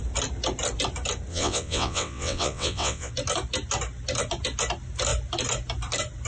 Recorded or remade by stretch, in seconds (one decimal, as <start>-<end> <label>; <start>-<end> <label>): 0.0-1.3 recorded; 1.3-3.1 remade; 3.1-6.3 recorded